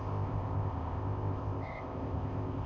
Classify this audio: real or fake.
fake